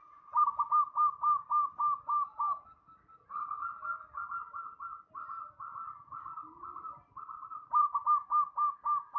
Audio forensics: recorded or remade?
recorded